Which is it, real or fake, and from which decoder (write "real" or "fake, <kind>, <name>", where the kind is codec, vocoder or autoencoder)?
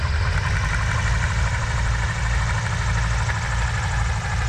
real